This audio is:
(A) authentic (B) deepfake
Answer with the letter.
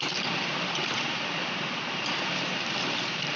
B